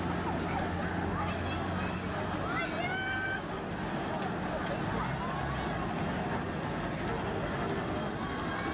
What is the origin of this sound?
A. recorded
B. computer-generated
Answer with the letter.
A